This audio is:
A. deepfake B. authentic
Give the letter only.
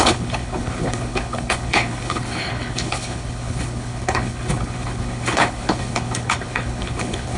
A